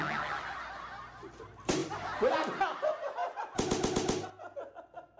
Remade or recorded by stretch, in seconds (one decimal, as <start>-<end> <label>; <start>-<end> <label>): 0.0-5.2 recorded